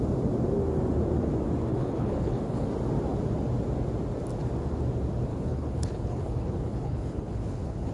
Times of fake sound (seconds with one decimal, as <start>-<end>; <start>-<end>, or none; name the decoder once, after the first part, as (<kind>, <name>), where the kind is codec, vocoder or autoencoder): 1.7-2.7 (codec, HILCodec); 5.3-7.9